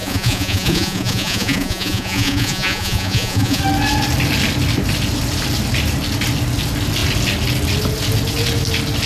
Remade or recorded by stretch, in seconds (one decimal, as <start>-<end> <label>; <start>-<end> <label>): 0.0-3.6 remade; 3.6-9.1 recorded